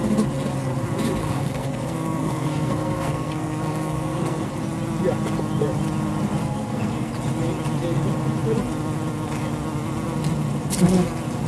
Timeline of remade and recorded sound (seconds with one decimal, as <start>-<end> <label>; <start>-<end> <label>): 0.0-1.2 recorded; 1.2-4.5 remade; 4.5-6.4 recorded; 6.4-7.1 remade; 7.1-11.5 recorded